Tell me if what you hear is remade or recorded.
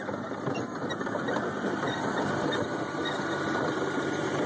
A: remade